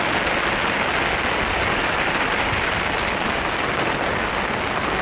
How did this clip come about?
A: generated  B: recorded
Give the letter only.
B